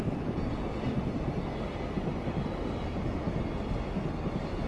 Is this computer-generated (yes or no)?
no